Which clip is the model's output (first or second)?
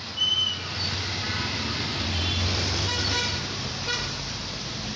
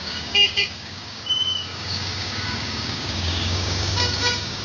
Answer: second